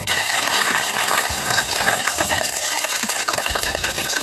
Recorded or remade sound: remade